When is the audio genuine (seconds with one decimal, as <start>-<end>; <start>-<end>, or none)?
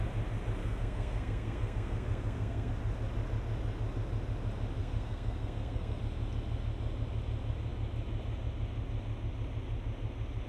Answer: 0.0-0.6; 2.7-4.8; 6.0-10.5